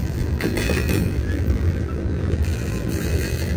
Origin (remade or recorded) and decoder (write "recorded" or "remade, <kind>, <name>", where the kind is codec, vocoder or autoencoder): remade, vocoder, BigVGAN v2